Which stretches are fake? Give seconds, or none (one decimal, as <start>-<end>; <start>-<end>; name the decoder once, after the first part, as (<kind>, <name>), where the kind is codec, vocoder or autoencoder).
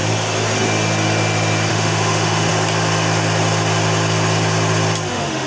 1.7-2.5 (autoencoder, DAC-VAE); 5.1-5.5